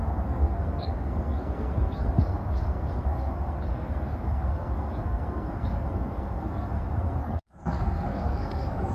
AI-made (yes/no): yes